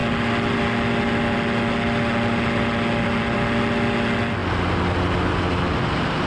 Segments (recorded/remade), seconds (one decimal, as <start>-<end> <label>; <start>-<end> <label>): 0.0-6.3 recorded